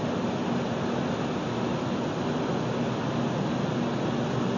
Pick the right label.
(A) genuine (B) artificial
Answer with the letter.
A